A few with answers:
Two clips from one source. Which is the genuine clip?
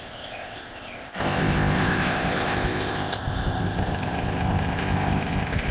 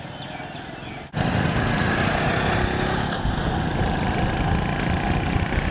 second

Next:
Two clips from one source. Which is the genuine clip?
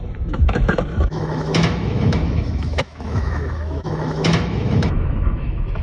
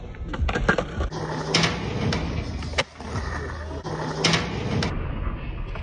second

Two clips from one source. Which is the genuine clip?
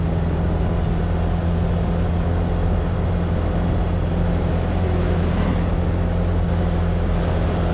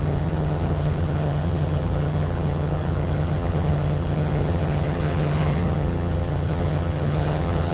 first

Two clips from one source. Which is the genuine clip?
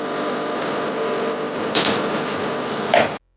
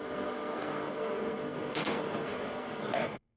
first